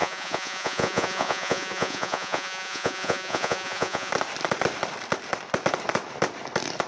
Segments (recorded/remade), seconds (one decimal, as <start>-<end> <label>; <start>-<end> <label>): 0.0-4.1 remade; 4.1-6.9 recorded